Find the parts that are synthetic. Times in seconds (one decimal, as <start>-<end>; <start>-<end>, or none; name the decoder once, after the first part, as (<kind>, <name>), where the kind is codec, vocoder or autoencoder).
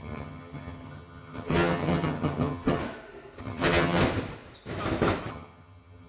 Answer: 0.0-2.8 (vocoder, HiFi-GAN); 3.4-4.0; 5.3-6.1